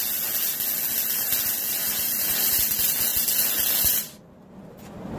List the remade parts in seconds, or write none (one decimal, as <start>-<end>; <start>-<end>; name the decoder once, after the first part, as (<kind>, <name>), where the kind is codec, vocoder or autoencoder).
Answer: 1.8-2.4 (vocoder, BigVGAN v2)